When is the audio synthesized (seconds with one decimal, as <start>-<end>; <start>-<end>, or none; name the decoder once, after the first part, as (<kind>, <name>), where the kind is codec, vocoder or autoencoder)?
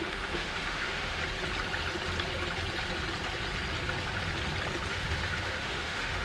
0.0-1.2 (autoencoder, DAC-VAE); 4.9-6.2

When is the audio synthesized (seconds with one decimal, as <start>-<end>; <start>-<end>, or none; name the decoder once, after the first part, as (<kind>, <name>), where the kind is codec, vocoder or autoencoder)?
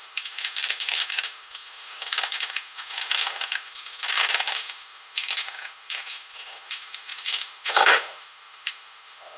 0.0-9.4 (autoencoder, DAC-VAE)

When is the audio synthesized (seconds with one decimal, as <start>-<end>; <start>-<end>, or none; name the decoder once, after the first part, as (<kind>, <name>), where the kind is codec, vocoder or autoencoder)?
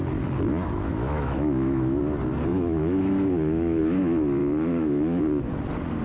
0.9-2.0 (autoencoder, DAC-VAE); 2.5-3.8; 4.4-5.2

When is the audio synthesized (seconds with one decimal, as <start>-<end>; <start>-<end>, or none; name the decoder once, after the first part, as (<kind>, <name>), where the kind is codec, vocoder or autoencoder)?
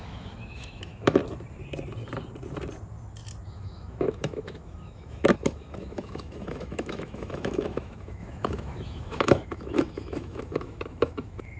0.0-1.2 (autoencoder, DAC-VAE); 3.5-11.6